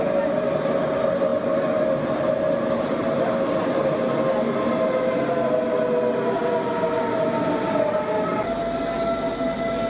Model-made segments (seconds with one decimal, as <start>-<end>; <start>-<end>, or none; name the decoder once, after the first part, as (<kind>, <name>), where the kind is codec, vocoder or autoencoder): none